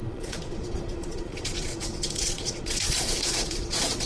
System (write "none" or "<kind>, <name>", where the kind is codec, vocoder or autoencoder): vocoder, Vocos